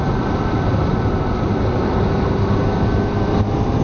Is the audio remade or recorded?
recorded